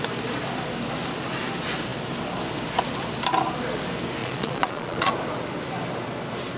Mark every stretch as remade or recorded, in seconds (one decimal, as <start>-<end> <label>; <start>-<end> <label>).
0.0-4.2 recorded; 4.2-5.1 remade; 5.1-6.6 recorded